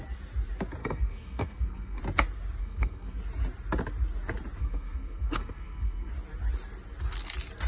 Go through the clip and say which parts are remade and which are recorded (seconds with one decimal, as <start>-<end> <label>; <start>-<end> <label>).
0.0-0.8 recorded; 0.8-2.0 remade; 2.0-2.6 recorded; 2.6-3.2 remade; 3.2-4.6 recorded; 4.6-6.1 remade; 6.1-7.7 recorded